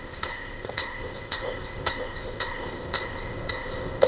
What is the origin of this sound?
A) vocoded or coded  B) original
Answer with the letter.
A